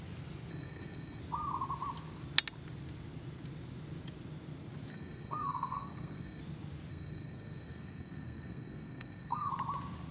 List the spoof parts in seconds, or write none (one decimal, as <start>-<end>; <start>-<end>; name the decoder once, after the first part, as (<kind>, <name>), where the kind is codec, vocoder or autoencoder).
0.5-1.2 (codec, SNAC); 4.9-6.4; 6.9-9.5